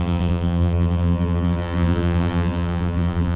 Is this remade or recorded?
remade